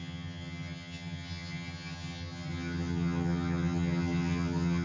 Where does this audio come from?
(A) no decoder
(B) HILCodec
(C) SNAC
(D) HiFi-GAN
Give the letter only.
D